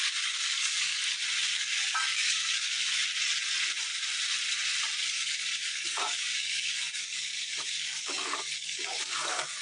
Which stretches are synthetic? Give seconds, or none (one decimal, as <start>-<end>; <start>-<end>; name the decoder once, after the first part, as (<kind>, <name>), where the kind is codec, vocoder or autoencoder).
0.0-1.0 (codec, DAC); 1.5-3.0; 5.0-9.6